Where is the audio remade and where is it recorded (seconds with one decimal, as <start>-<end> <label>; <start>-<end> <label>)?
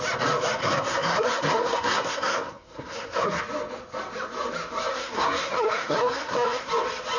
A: 0.0-0.6 recorded; 0.6-3.4 remade; 3.4-4.9 recorded; 4.9-6.7 remade; 6.7-7.2 recorded